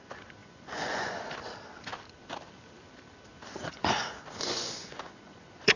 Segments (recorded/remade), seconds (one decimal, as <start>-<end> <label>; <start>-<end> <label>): 0.0-0.4 recorded; 0.4-1.2 remade; 1.2-3.6 recorded; 3.6-5.8 remade